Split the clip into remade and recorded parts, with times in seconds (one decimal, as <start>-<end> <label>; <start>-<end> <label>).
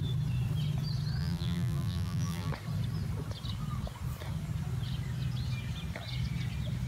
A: 0.0-1.2 recorded; 1.2-2.5 remade; 2.5-6.9 recorded